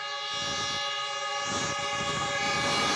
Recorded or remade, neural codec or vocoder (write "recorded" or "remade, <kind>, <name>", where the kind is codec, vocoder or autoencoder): recorded